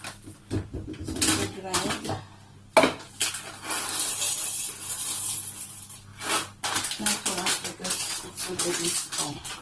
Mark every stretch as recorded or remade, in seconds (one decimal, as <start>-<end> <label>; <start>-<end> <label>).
0.0-9.6 recorded

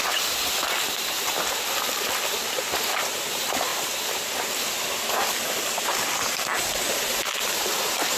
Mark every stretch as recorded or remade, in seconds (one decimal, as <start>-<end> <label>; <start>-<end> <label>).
0.0-8.2 recorded

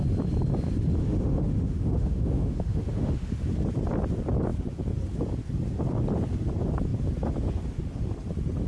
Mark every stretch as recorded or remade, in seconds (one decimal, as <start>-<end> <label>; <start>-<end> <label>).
0.0-1.0 recorded; 1.0-3.3 remade; 3.3-8.7 recorded

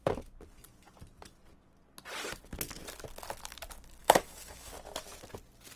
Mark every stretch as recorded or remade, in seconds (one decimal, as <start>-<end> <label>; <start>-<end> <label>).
0.0-4.0 recorded; 4.0-4.7 remade; 4.7-5.8 recorded

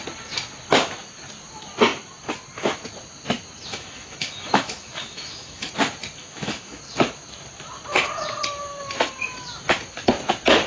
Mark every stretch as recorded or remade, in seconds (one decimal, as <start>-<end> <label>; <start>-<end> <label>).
0.0-3.7 recorded; 3.7-5.7 remade; 5.7-6.2 recorded; 6.2-6.8 remade; 6.8-10.7 recorded

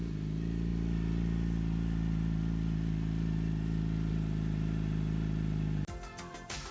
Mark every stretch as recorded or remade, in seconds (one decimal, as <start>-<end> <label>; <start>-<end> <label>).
0.0-6.7 recorded